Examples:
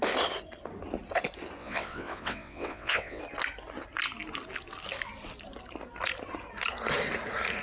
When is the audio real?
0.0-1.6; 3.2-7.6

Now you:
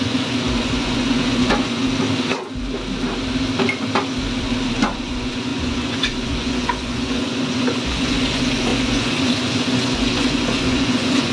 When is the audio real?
1.8-4.7

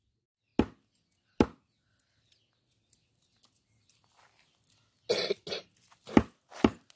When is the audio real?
0.0-7.0

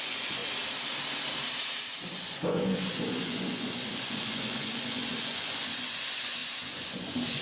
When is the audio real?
0.4-2.0

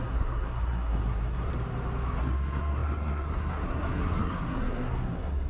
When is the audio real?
1.5-2.2

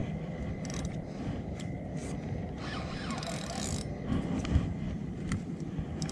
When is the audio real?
0.0-0.9; 2.0-5.0